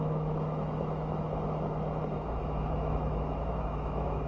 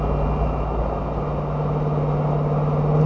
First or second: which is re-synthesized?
first